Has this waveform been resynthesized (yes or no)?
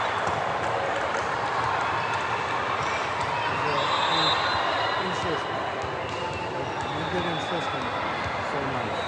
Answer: no